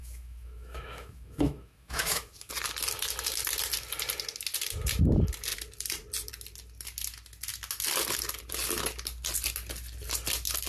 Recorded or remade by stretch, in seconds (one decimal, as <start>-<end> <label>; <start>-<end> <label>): 0.0-2.5 remade; 2.5-10.7 recorded